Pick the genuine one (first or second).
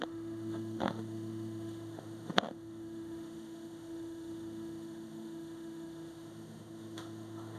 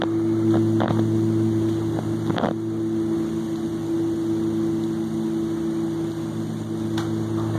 second